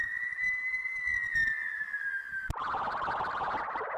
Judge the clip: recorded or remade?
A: recorded